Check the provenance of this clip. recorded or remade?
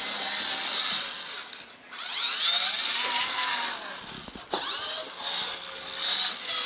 recorded